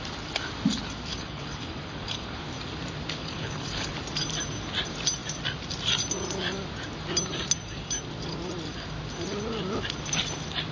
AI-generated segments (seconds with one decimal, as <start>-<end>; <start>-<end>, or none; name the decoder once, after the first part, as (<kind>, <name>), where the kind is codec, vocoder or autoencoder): 1.1-2.4 (codec, HILCodec); 3.2-3.9